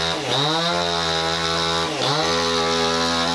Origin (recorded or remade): recorded